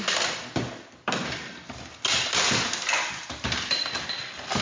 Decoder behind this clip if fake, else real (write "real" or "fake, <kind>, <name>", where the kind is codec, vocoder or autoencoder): real